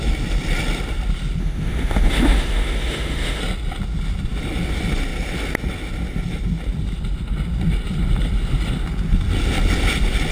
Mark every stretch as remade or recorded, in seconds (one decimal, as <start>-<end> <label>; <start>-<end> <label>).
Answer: 0.0-1.4 recorded; 1.4-3.4 remade; 3.4-10.3 recorded